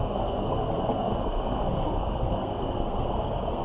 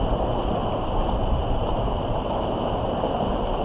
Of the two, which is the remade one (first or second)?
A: first